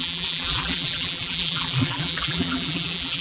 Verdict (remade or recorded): remade